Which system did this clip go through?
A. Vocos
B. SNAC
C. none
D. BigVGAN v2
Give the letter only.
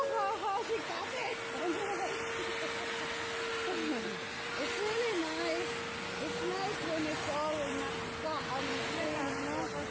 C